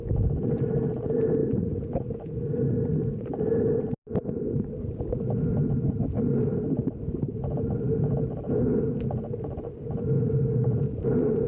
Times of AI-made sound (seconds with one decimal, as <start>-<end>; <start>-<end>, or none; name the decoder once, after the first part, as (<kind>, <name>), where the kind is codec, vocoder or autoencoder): none